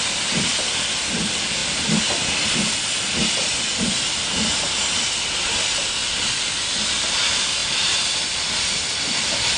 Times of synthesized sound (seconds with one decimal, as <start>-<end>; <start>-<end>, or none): 6.0-6.6; 7.6-8.6